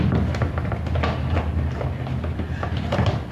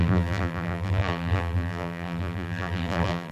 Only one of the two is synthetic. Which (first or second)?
second